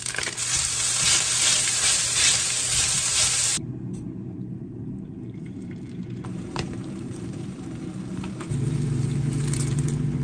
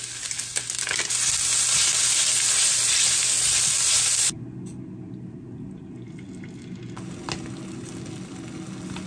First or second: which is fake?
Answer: first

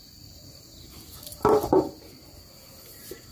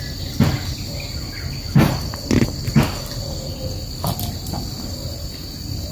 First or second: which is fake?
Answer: first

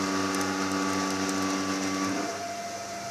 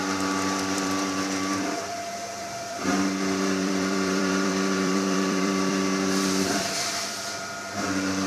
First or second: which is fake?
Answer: second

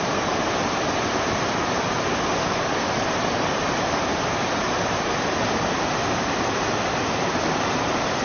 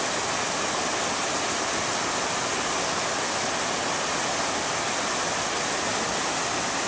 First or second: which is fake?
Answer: first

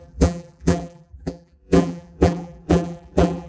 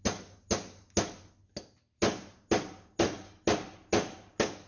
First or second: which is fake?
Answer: first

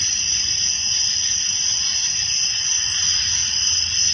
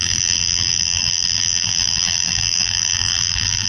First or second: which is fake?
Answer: second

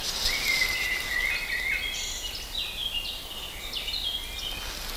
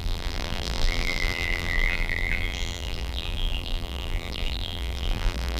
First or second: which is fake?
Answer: second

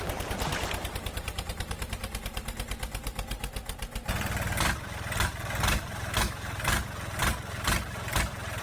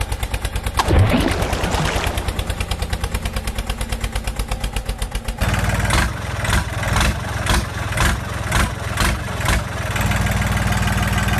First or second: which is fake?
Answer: first